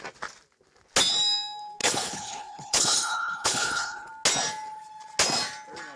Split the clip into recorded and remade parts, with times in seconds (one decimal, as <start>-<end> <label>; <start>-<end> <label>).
0.0-1.8 recorded; 1.8-4.1 remade; 4.1-6.0 recorded